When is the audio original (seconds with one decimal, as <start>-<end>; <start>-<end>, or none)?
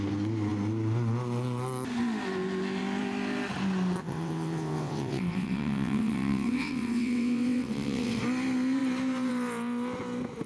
0.0-4.0; 8.2-10.5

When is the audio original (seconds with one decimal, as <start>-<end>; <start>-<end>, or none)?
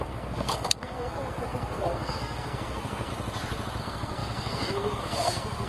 3.1-3.8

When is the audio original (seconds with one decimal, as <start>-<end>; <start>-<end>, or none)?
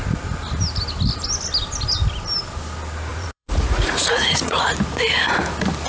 0.0-3.1; 4.6-5.9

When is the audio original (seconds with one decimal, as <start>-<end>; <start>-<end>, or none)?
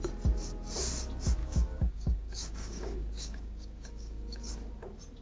0.0-1.4; 4.5-5.2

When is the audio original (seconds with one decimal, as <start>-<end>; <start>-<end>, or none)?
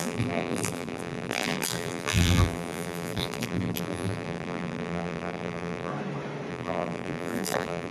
5.9-6.5